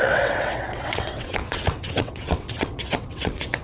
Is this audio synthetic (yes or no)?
yes